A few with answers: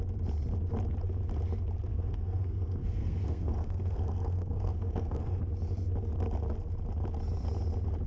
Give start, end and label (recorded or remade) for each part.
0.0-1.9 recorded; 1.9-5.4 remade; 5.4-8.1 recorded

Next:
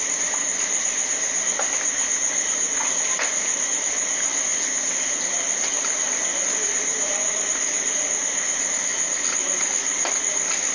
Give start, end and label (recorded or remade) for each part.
0.0-10.7 recorded

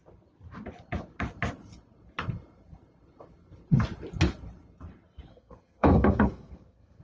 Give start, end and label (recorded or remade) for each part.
0.0-5.3 recorded; 5.3-7.0 remade

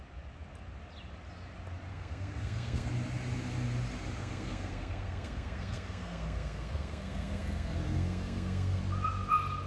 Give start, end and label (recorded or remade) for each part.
0.0-1.9 recorded; 1.9-2.9 remade; 2.9-4.2 recorded; 4.2-8.8 remade; 8.8-9.7 recorded

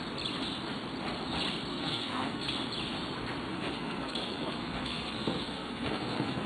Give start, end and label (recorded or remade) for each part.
0.0-1.7 recorded; 1.7-2.5 remade; 2.5-3.5 recorded; 3.5-6.5 remade

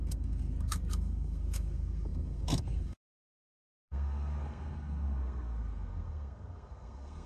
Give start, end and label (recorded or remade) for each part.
0.0-7.3 remade

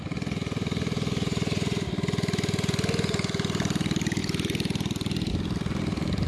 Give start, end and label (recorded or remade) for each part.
0.0-6.3 recorded

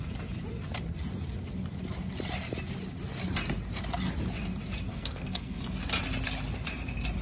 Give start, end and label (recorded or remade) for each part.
0.0-4.9 recorded; 4.9-5.6 remade; 5.6-7.2 recorded